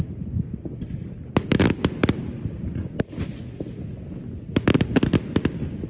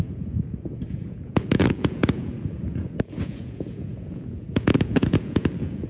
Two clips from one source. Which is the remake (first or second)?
second